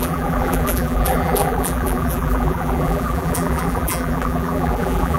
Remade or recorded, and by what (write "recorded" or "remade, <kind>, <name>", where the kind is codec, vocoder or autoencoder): remade, vocoder, BigVGAN v2